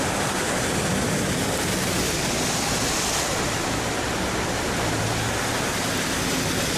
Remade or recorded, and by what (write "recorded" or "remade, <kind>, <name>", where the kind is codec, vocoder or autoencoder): recorded